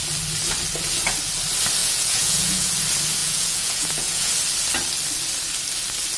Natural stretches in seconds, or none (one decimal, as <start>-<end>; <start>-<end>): 0.0-1.8; 2.7-3.2; 4.3-6.2